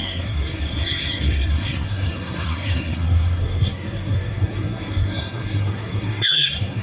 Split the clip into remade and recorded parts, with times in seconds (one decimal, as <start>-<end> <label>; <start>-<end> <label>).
0.0-6.8 remade